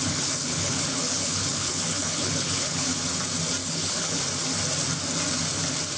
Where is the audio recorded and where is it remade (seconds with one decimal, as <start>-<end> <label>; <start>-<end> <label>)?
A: 0.0-2.9 remade; 2.9-3.6 recorded; 3.6-4.2 remade; 4.2-6.0 recorded